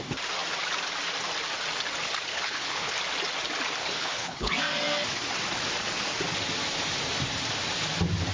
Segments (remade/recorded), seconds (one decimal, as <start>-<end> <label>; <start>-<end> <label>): 0.0-2.3 recorded; 2.3-2.9 remade; 2.9-3.8 recorded; 3.8-4.5 remade; 4.5-8.3 recorded